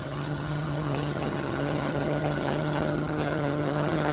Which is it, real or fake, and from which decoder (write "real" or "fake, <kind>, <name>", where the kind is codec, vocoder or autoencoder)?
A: fake, vocoder, HiFi-GAN